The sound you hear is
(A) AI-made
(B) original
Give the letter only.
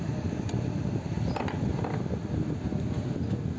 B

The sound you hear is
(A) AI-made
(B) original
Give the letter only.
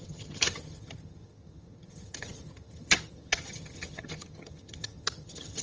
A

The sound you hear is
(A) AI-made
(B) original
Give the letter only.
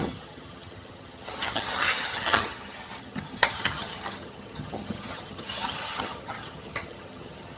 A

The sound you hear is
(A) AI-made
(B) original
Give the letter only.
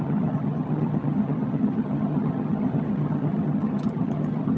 A